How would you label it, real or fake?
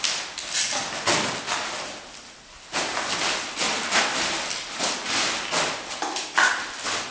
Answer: real